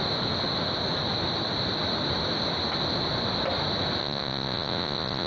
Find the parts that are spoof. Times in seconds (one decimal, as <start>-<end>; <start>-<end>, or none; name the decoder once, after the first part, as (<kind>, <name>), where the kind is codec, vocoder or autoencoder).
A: 4.0-5.3 (vocoder, Vocos)